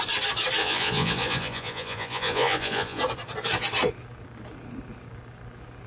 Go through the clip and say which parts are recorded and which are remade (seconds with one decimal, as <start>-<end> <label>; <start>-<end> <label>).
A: 0.0-0.6 recorded; 0.6-3.0 remade; 3.0-5.9 recorded

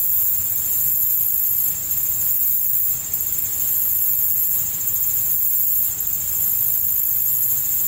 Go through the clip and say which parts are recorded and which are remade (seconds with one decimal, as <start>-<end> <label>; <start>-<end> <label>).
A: 0.0-1.2 remade; 1.2-3.4 recorded; 3.4-5.3 remade; 5.3-7.3 recorded; 7.3-7.9 remade

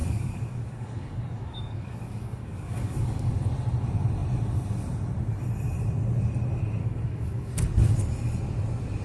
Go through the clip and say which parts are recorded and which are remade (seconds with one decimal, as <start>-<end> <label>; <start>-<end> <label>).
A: 0.0-3.3 remade; 3.3-6.8 recorded; 6.8-7.5 remade; 7.5-9.0 recorded

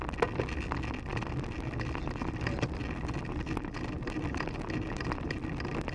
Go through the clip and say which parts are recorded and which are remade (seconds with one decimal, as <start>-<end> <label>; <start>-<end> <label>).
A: 0.0-5.9 recorded